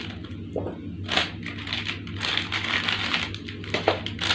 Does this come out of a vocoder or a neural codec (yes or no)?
no